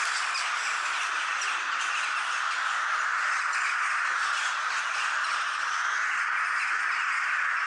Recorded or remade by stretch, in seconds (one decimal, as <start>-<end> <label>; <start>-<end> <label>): 0.0-7.7 recorded